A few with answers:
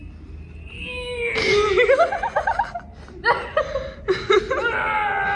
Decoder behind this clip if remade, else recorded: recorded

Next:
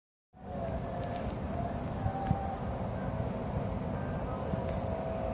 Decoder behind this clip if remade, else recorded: recorded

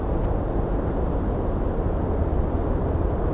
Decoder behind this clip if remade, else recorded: recorded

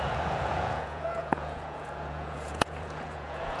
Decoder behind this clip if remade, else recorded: remade, vocoder, Vocos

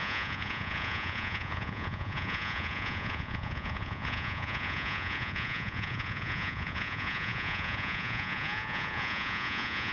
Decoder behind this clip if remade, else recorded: remade, vocoder, Vocos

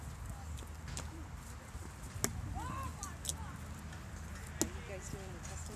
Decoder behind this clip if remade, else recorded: recorded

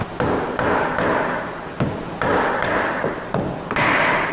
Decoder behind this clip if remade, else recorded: recorded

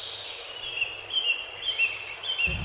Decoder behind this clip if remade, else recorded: recorded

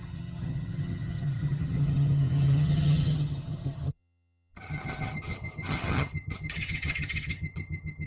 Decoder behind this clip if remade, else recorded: remade, vocoder, HiFi-GAN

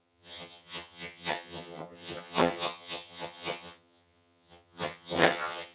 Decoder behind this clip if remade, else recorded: remade, vocoder, HiFi-GAN